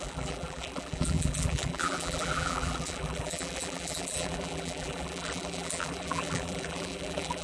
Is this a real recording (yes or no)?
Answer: no